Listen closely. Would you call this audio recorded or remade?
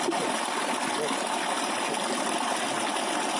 recorded